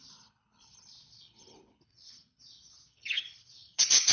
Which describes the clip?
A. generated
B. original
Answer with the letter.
A